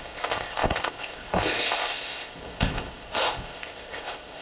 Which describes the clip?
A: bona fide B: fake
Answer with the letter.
B